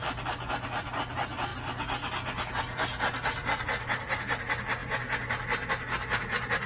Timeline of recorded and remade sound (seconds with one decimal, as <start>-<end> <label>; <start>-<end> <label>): 0.0-6.7 recorded